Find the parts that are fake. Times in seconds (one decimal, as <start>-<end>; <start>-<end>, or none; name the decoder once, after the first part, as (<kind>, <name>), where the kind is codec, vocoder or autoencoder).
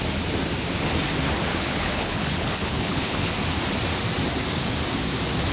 1.5-3.3 (codec, HILCodec)